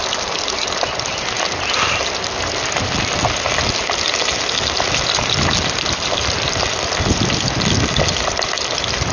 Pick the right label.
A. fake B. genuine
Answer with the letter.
B